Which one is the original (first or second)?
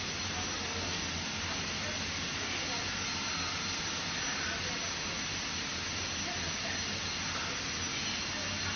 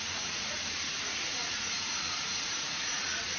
first